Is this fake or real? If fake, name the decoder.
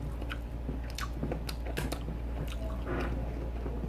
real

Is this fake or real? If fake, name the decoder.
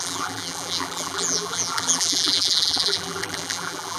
fake, vocoder, BigVGAN v2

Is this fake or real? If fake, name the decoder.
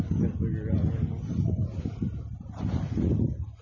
real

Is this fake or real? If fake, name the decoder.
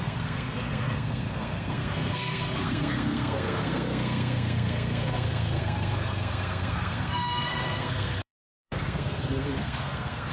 fake, codec, SNAC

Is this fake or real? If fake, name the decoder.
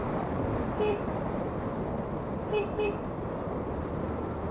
real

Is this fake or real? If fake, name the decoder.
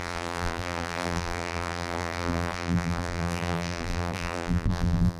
fake, vocoder, BigVGAN v2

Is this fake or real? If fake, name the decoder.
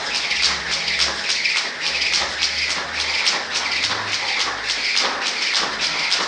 real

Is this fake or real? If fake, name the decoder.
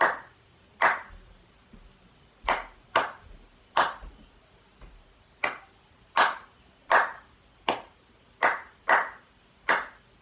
real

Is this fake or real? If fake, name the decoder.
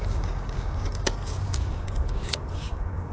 fake, codec, DAC